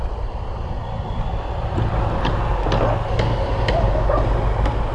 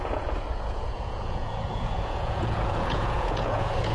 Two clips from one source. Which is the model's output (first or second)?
second